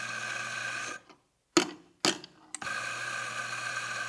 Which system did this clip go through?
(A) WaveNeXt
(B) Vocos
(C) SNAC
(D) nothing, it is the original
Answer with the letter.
D